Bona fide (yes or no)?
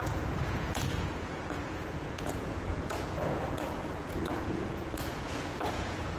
no